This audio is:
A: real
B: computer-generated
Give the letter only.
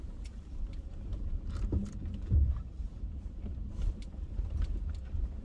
B